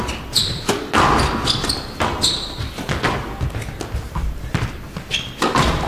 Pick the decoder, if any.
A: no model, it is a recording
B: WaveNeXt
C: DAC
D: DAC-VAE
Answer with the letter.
A